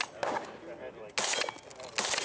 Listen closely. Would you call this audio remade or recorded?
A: recorded